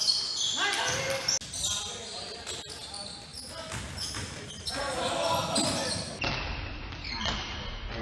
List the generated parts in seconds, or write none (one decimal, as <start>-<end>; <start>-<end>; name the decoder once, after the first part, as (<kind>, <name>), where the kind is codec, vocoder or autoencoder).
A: none